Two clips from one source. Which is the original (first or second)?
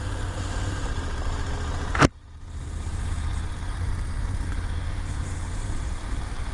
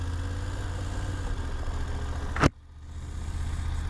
second